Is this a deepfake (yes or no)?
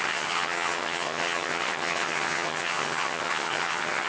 yes